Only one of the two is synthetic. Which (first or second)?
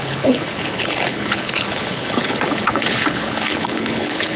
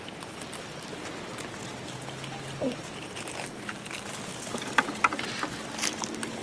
first